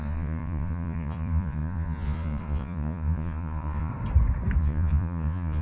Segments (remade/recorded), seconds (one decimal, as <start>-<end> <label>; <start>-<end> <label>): 0.0-3.9 remade; 3.9-4.6 recorded; 4.6-5.6 remade